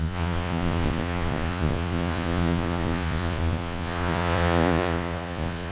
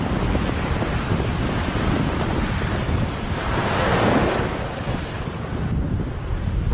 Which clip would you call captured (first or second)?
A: second